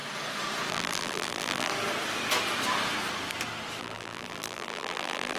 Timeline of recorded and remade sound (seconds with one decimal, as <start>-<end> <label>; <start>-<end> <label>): 0.0-0.7 recorded; 0.7-1.7 remade; 1.7-3.8 recorded; 3.8-5.4 remade